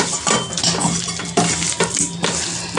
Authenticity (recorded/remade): recorded